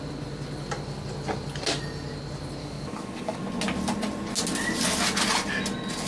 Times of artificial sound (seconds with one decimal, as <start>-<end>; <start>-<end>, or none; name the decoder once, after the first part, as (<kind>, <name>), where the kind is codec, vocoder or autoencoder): 2.6-3.4 (codec, DAC)